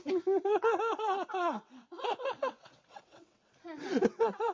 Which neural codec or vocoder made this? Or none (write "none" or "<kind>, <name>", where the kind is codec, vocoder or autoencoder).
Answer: vocoder, WaveNeXt